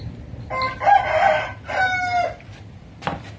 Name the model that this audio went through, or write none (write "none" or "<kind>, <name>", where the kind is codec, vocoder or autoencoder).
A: none